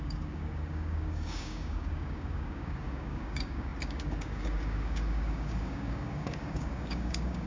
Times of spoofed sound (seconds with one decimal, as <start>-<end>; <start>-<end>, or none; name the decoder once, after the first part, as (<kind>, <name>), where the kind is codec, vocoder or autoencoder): 0.0-7.5 (codec, DAC)